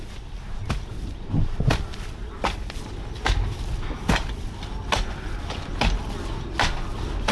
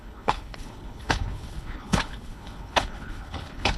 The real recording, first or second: first